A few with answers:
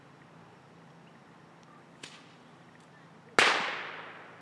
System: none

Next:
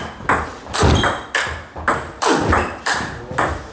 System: none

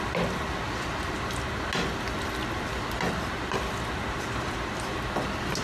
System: none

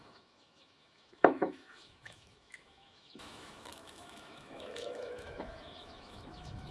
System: autoencoder, DAC-VAE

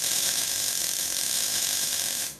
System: autoencoder, DAC-VAE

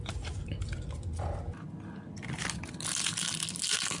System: none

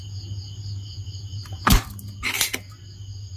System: none